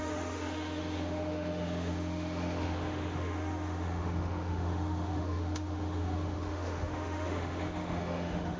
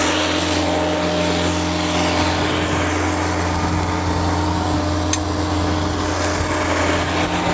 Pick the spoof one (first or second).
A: first